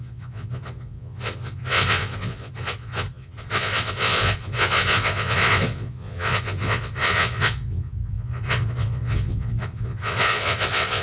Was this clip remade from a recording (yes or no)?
yes